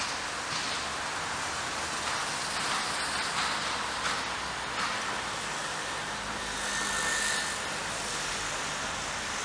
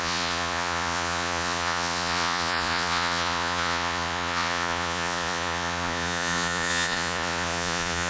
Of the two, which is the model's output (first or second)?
second